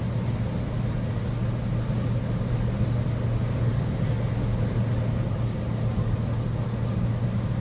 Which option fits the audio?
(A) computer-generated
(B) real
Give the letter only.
B